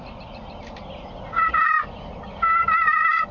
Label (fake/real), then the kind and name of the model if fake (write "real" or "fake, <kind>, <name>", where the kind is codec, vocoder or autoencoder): real